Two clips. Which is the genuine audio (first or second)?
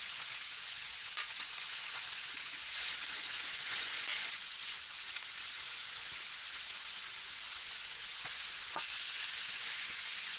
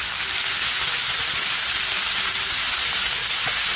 second